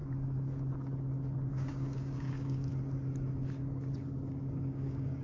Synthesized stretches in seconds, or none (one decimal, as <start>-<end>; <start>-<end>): 1.5-2.7; 4.4-5.2